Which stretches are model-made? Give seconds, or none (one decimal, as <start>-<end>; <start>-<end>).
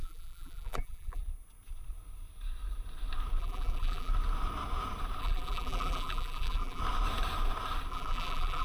0.0-1.2; 3.4-4.1; 5.2-6.8; 7.9-8.6